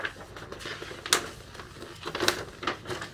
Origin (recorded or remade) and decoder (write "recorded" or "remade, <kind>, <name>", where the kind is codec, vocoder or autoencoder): recorded